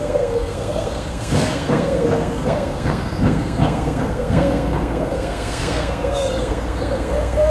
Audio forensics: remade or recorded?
remade